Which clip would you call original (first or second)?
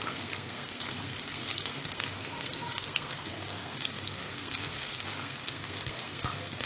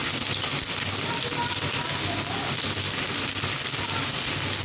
second